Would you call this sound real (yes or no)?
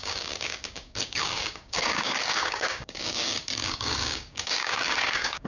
no